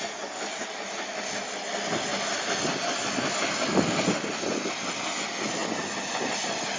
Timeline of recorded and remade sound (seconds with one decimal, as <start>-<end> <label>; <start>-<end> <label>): 0.0-6.8 recorded